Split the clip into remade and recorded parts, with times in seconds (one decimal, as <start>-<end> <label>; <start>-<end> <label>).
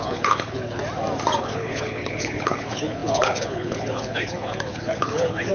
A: 0.0-0.8 remade; 0.8-1.4 recorded; 1.4-5.5 remade